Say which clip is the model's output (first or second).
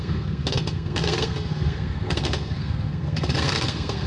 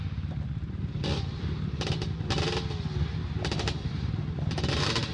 first